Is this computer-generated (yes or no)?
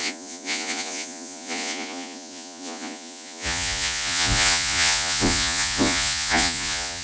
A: yes